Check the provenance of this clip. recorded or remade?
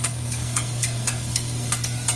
remade